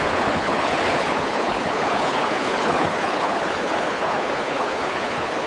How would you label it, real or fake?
fake